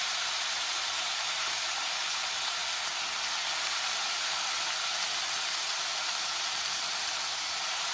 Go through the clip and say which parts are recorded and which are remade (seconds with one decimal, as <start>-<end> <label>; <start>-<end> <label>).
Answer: 0.0-2.6 remade; 2.6-7.3 recorded; 7.3-7.9 remade